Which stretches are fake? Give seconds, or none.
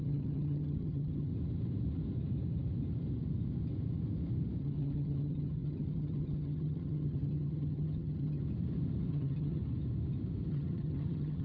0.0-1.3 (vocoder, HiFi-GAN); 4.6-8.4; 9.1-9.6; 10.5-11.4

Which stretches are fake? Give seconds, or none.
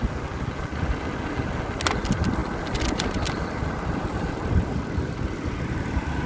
none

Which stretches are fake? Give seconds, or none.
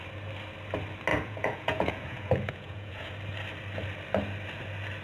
1.1-3.1 (vocoder, Vocos)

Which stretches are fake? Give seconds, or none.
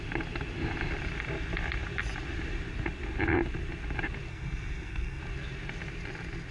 4.3-5.2 (codec, SNAC)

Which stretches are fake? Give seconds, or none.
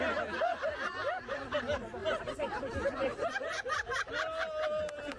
2.0-5.2 (vocoder, BigVGAN v2)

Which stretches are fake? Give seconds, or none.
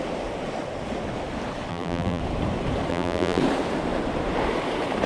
1.7-2.2 (vocoder, BigVGAN v2); 2.9-3.4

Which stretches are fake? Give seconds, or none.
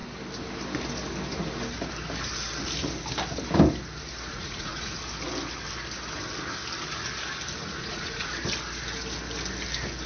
4.3-5.0 (vocoder, Vocos); 7.6-8.3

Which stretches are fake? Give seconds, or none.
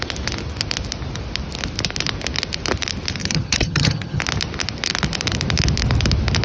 3.2-4.2 (vocoder, HiFi-GAN)